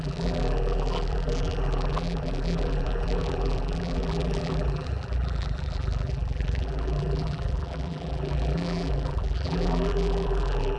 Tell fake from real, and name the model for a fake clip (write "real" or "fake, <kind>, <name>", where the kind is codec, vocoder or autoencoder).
fake, vocoder, BigVGAN v2